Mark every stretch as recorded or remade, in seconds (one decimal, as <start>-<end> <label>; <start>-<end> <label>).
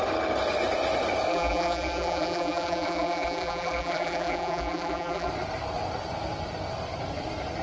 0.0-1.3 recorded; 1.3-5.3 remade; 5.3-7.6 recorded